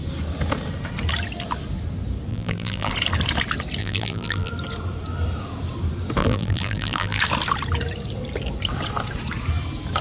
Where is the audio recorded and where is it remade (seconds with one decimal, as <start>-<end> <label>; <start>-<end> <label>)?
0.0-2.3 recorded; 2.3-2.9 remade; 2.9-3.8 recorded; 3.8-4.5 remade; 4.5-6.2 recorded; 6.2-7.2 remade; 7.2-10.0 recorded